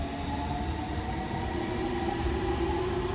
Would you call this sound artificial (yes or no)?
no